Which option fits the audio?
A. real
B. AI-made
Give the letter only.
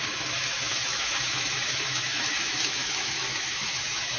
B